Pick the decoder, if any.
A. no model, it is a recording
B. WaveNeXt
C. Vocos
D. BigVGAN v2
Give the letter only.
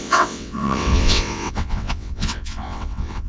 B